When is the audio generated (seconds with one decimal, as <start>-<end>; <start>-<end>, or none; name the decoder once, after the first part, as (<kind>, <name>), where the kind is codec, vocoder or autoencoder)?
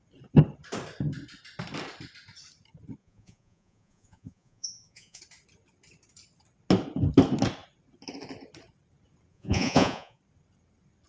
3.0-5.2 (vocoder, Vocos); 9.3-10.2